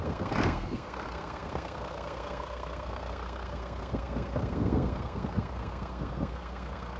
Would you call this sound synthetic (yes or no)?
yes